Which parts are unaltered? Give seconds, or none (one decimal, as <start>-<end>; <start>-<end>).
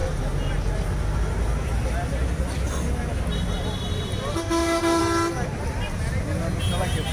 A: 0.0-4.3; 5.0-7.1